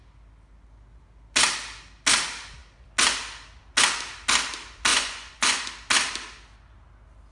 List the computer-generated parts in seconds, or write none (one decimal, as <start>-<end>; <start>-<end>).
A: 4.9-5.7